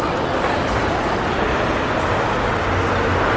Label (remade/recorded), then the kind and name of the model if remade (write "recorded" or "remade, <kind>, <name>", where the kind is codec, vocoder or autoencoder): recorded